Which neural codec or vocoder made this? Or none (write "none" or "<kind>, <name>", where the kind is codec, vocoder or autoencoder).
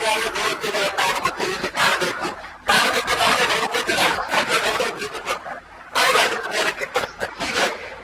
codec, DAC